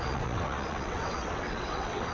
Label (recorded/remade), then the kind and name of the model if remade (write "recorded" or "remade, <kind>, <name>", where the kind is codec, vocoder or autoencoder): remade, vocoder, WaveNeXt